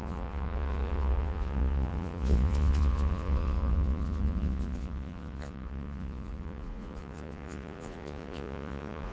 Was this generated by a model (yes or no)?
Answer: yes